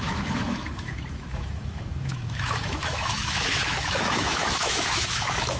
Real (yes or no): no